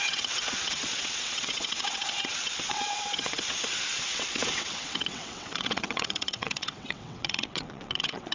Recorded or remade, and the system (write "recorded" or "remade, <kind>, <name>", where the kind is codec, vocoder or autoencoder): remade, vocoder, WaveNeXt